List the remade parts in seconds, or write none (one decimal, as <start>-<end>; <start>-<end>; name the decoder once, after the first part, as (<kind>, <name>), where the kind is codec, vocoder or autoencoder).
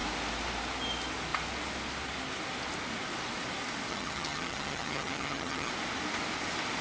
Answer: 3.9-5.7 (vocoder, HiFi-GAN)